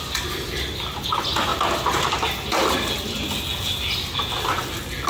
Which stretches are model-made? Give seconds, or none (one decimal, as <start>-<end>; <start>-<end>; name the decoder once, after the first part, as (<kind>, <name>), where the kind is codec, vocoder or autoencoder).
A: none